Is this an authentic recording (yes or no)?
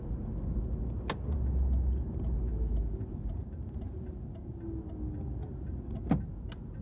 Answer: yes